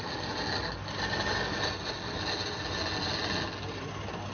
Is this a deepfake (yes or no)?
no